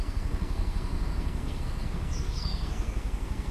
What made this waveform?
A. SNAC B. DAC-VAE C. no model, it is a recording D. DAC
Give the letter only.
A